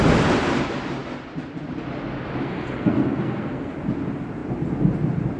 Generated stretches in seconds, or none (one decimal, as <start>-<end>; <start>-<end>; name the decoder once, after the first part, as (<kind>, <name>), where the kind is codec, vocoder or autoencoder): 2.4-3.7 (codec, SNAC)